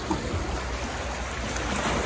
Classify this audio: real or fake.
real